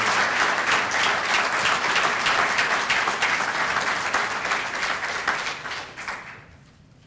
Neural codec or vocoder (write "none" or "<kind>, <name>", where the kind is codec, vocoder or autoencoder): none